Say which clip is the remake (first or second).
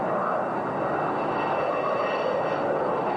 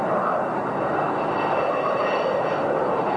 second